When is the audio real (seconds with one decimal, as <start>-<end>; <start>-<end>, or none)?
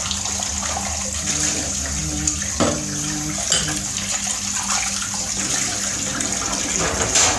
0.0-7.4